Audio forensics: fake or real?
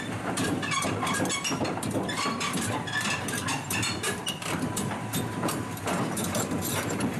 fake